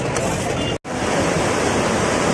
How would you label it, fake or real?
real